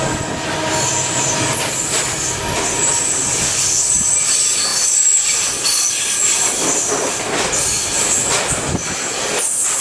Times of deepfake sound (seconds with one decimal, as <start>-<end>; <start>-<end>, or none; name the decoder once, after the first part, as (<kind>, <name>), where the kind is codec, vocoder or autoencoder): none

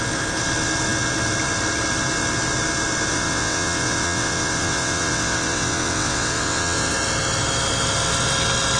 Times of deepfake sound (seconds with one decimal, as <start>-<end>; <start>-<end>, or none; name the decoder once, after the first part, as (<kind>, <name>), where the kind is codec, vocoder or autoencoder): 3.1-6.9 (vocoder, WaveNeXt)

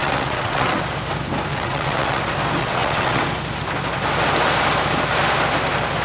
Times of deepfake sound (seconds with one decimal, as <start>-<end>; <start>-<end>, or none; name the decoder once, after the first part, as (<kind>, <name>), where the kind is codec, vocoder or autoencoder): 0.0-0.8 (vocoder, WaveNeXt); 1.5-2.2; 2.6-3.2